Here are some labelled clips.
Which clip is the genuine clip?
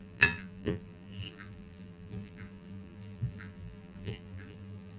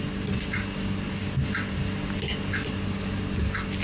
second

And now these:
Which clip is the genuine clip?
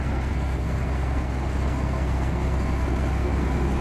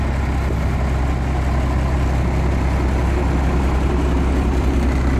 second